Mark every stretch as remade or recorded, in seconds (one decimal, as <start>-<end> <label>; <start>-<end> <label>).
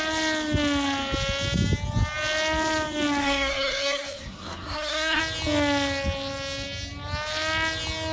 0.0-3.2 recorded; 3.2-5.2 remade; 5.2-8.1 recorded